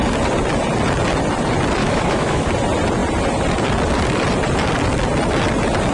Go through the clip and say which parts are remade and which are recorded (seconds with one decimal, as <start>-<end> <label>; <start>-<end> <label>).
0.0-1.8 recorded; 1.8-2.5 remade; 2.5-5.9 recorded